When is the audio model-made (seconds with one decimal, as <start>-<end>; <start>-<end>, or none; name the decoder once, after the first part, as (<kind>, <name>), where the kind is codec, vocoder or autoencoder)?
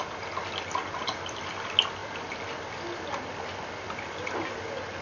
none